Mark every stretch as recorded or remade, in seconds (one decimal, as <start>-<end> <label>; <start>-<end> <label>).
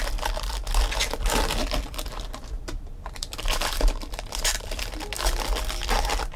0.0-1.0 recorded; 1.0-4.8 remade; 4.8-6.4 recorded